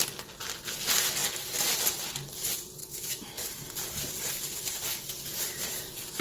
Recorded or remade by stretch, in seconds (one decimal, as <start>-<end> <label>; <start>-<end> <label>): 0.0-2.8 recorded; 2.8-3.3 remade; 3.3-6.2 recorded